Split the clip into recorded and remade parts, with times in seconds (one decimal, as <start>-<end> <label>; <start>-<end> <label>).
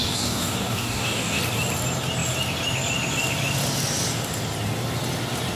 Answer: 0.0-1.4 remade; 1.4-5.6 recorded